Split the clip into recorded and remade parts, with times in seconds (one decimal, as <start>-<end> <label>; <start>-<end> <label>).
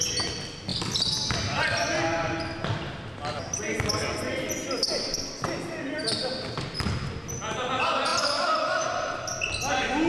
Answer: 0.0-8.1 recorded; 8.1-9.1 remade; 9.1-10.1 recorded